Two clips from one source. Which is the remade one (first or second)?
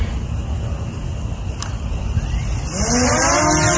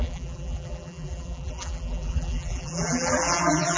second